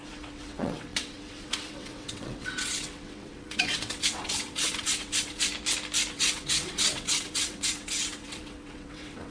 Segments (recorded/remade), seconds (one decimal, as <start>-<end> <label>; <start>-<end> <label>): 0.0-5.5 remade; 5.5-6.1 recorded; 6.1-9.3 remade